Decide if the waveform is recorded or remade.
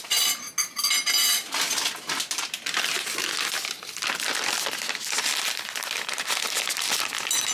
recorded